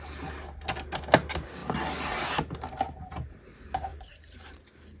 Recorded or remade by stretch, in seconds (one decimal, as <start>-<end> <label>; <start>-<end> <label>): 0.0-3.9 recorded; 3.9-5.0 remade